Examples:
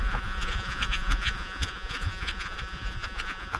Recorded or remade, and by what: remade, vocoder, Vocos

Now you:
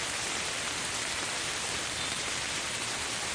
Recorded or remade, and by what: recorded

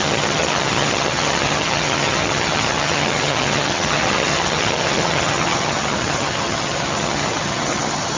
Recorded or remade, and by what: remade, vocoder, HiFi-GAN